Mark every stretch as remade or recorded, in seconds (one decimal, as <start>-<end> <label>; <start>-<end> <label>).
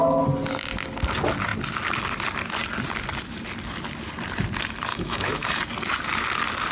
0.0-4.9 recorded; 4.9-5.6 remade; 5.6-6.7 recorded